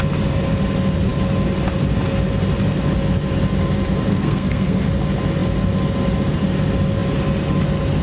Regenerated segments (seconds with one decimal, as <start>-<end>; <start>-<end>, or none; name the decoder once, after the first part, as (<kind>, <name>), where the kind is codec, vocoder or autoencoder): 4.1-4.8 (codec, SNAC)

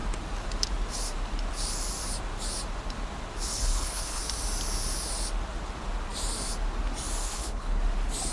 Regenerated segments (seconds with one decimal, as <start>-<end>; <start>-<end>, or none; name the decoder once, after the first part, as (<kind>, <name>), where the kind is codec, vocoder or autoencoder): 3.5-4.2 (codec, HILCodec); 7.2-7.8

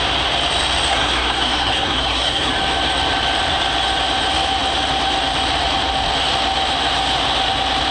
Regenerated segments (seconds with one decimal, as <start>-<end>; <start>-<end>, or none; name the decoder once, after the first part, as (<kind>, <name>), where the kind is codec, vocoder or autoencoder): 0.9-2.5 (codec, SNAC)

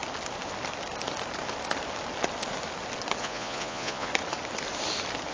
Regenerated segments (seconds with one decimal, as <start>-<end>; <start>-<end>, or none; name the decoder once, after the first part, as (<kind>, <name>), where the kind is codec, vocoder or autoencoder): 3.2-4.1 (vocoder, Vocos)

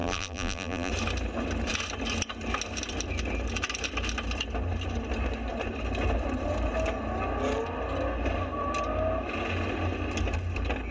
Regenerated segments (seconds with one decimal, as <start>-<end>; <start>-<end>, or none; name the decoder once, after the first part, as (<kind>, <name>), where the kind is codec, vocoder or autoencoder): 0.0-0.9 (vocoder, BigVGAN v2)

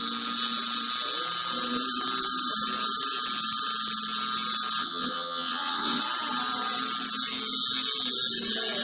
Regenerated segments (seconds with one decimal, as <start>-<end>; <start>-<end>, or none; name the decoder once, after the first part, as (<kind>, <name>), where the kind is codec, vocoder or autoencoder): 4.8-6.0 (vocoder, WaveNeXt)

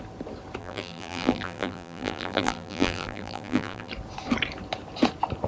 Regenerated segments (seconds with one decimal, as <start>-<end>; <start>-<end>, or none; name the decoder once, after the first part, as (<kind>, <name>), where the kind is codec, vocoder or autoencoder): 0.6-3.9 (vocoder, BigVGAN v2)

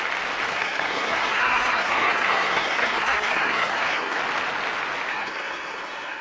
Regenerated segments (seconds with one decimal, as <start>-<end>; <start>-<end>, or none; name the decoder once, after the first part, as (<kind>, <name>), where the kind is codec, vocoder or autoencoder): 0.5-4.2 (codec, SNAC); 5.1-6.2